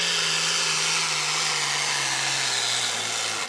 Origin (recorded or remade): recorded